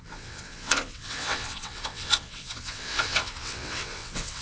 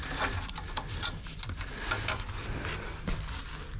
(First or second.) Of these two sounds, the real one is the second